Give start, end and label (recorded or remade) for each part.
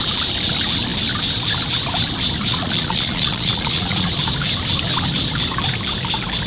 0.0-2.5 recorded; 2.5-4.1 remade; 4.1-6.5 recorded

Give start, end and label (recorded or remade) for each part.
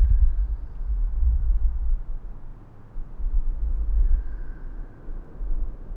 0.0-6.0 recorded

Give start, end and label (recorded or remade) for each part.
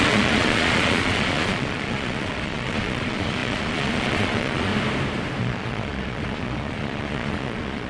0.0-4.7 remade; 4.7-5.4 recorded; 5.4-7.9 remade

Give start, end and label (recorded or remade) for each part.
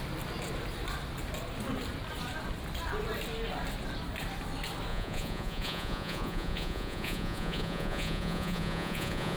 0.0-4.9 recorded; 4.9-9.4 remade